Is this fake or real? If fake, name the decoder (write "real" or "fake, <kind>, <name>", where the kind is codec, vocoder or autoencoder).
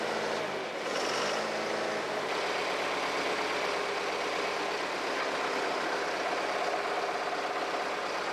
real